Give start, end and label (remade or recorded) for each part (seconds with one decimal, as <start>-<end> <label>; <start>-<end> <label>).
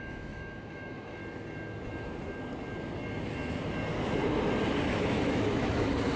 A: 0.0-1.2 remade; 1.2-4.9 recorded; 4.9-6.2 remade